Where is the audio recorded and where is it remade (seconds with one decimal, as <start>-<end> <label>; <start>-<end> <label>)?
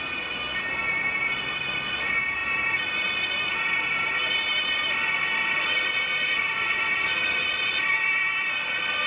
0.0-9.1 recorded